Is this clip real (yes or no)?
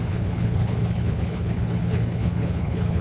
no